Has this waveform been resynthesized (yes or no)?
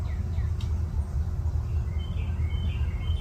no